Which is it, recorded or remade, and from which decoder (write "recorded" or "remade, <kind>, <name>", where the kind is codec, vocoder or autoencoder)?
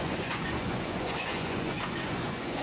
remade, vocoder, Vocos